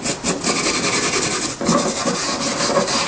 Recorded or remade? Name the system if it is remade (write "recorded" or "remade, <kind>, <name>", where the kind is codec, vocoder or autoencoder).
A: recorded